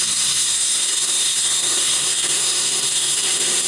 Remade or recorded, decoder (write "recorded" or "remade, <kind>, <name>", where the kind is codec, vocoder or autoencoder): remade, codec, SNAC